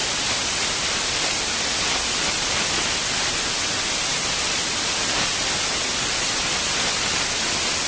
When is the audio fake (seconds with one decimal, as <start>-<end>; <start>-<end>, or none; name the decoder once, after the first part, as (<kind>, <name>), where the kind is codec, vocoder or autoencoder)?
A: none